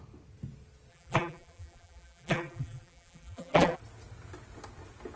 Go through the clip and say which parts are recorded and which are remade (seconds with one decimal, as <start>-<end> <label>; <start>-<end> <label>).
0.0-0.9 recorded; 0.9-3.8 remade; 3.8-5.2 recorded